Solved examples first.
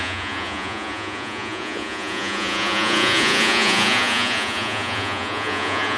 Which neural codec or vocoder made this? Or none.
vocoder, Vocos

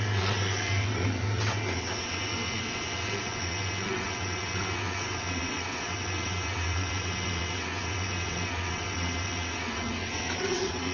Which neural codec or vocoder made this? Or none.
vocoder, WaveNeXt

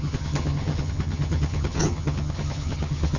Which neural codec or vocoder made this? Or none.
vocoder, HiFi-GAN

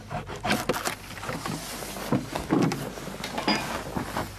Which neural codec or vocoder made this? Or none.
none